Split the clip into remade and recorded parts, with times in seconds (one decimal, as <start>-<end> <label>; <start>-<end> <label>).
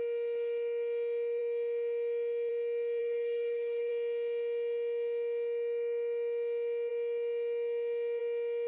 0.0-3.0 recorded; 3.0-3.9 remade; 3.9-8.7 recorded